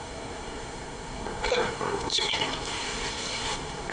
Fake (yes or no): yes